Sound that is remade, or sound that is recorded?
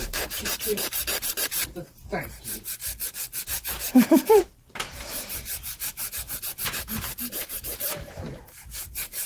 remade